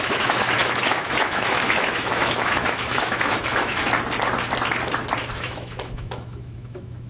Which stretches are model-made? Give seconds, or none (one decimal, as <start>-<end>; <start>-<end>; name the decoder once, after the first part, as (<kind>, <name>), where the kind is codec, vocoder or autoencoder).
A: 0.0-3.8 (autoencoder, DAC-VAE); 5.3-7.1